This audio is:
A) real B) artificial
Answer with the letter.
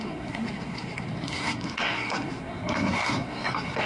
B